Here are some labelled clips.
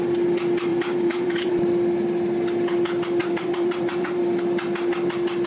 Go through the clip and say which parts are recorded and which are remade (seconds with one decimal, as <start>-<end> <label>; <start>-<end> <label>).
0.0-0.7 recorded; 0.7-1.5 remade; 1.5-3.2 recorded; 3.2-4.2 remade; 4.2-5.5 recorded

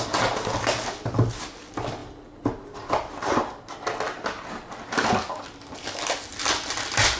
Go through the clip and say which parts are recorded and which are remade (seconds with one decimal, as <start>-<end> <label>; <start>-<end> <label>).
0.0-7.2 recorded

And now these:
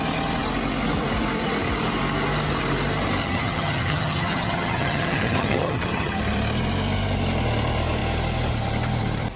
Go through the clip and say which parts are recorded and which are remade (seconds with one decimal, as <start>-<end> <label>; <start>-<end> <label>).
0.0-3.2 recorded; 3.2-6.2 remade; 6.2-9.4 recorded

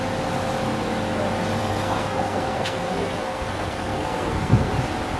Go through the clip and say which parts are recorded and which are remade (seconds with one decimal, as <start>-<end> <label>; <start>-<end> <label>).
0.0-1.6 recorded; 1.6-4.7 remade; 4.7-5.2 recorded